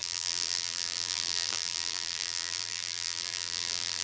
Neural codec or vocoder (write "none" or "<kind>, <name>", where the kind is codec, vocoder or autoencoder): vocoder, BigVGAN v2